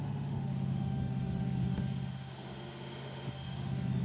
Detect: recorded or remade remade